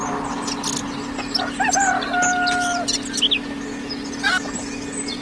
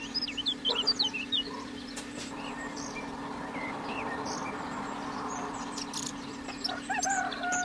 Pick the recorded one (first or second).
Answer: first